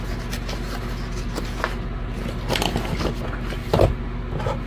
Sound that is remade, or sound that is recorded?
recorded